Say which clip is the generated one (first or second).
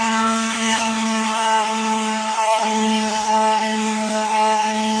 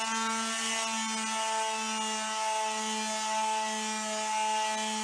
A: first